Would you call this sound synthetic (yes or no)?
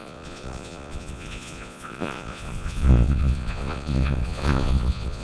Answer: yes